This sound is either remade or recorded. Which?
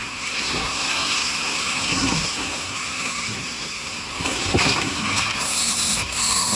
remade